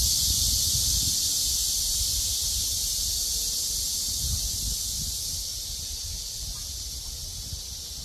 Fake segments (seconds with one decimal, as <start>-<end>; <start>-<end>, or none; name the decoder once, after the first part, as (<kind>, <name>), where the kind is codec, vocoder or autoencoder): none